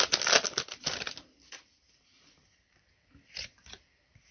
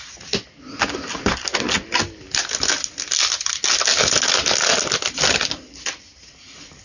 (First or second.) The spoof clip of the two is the first